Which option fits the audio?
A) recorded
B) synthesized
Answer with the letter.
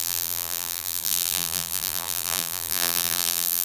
B